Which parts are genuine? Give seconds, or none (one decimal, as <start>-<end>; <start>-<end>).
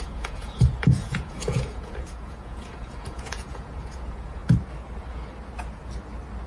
4.4-6.5